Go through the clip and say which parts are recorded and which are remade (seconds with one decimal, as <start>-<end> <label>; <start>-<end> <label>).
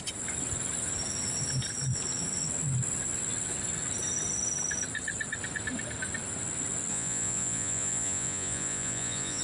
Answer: 0.0-6.9 recorded; 6.9-9.4 remade